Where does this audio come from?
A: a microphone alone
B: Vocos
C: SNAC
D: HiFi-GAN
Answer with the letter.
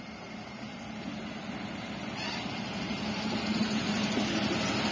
A